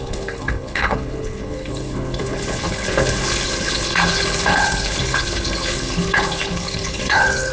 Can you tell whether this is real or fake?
fake